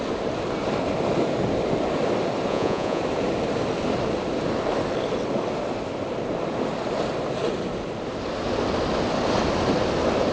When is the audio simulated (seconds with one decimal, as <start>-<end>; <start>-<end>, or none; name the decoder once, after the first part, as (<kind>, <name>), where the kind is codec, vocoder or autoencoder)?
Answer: 2.5-3.0 (vocoder, Vocos)